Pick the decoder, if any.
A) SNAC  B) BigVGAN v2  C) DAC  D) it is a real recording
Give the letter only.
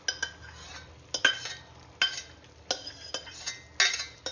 D